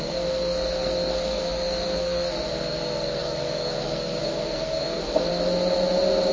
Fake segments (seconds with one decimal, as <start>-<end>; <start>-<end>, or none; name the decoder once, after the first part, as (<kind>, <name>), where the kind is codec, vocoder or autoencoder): 0.0-5.3 (codec, SNAC)